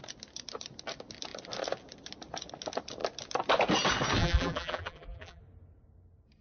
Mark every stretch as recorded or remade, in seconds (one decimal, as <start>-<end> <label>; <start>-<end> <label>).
0.0-4.2 recorded; 4.2-5.4 remade; 5.4-6.4 recorded